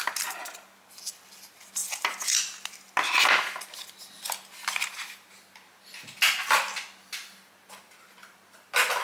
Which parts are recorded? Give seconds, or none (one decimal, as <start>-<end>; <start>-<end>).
0.0-9.0

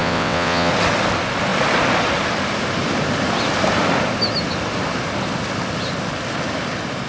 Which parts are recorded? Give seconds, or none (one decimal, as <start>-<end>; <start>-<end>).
0.7-7.1

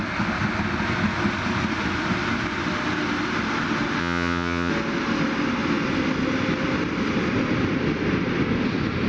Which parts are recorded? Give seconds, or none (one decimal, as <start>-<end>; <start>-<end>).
0.0-4.0; 4.7-9.1

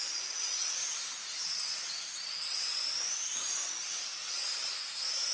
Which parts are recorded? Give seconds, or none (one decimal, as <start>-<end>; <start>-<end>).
0.0-4.2; 4.7-5.3

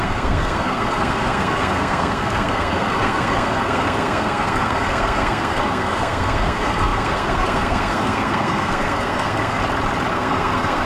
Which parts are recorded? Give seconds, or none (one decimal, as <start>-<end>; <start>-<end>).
9.6-10.1

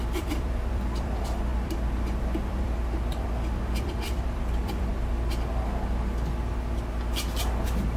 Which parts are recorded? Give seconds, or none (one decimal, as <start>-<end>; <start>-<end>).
4.9-8.0

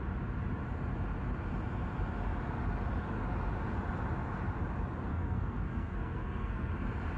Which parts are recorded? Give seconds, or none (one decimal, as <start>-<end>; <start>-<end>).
0.0-5.1; 6.7-7.2